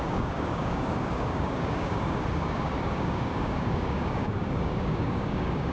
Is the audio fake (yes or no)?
yes